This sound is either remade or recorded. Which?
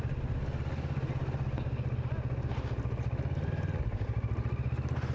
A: recorded